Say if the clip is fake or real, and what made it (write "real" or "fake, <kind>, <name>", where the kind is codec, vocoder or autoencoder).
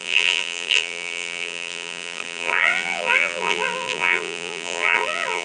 fake, vocoder, BigVGAN v2